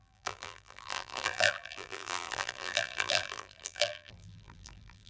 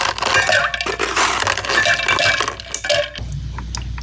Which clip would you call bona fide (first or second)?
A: second